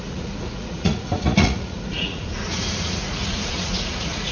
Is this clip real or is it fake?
fake